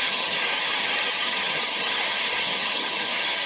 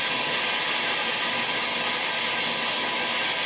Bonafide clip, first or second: second